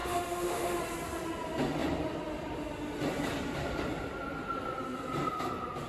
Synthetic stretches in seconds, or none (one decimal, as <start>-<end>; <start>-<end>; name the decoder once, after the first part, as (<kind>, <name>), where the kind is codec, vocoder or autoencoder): 0.0-0.8 (autoencoder, DAC-VAE)